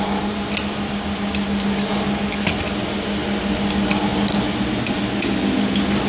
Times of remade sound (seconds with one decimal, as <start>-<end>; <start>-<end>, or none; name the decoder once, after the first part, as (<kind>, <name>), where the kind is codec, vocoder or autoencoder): none